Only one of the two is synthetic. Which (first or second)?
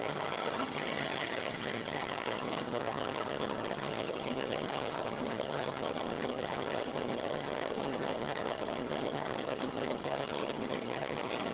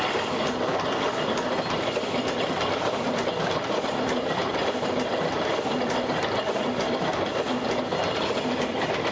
first